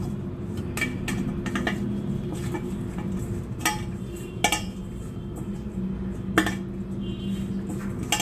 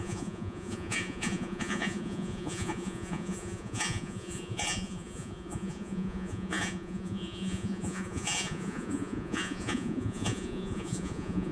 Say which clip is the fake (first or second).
second